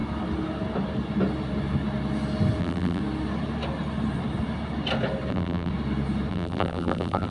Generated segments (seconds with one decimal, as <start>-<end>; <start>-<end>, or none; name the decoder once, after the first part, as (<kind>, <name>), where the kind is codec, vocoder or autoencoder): 2.6-3.0 (vocoder, BigVGAN v2); 5.3-5.7; 6.3-7.3